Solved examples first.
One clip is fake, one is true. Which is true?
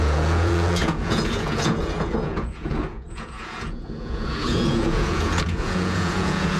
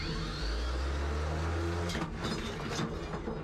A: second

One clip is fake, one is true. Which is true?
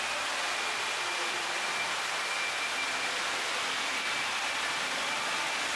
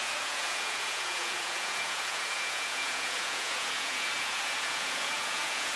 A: first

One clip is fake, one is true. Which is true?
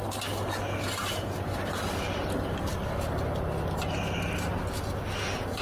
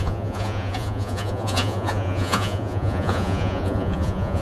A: first